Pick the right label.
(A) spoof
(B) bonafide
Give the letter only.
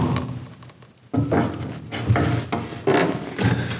B